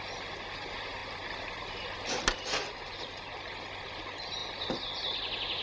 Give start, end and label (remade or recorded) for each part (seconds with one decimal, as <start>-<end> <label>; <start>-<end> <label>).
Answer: 0.0-5.6 recorded